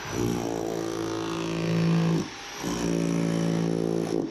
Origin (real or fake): real